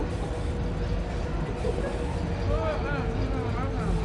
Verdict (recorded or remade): recorded